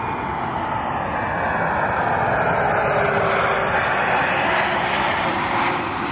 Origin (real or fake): real